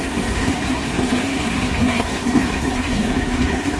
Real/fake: fake